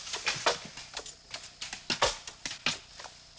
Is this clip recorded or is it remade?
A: recorded